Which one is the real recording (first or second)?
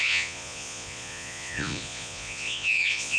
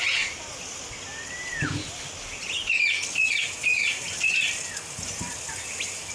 second